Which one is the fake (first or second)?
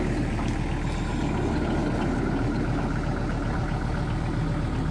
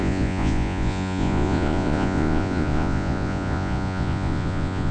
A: second